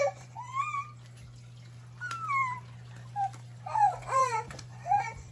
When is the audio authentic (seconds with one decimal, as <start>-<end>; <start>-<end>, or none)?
0.5-3.7